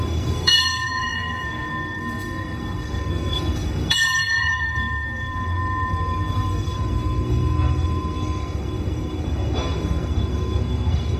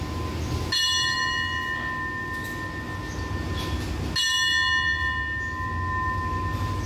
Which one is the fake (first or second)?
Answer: first